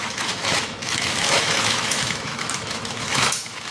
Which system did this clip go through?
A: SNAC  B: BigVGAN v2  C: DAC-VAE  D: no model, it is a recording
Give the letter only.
C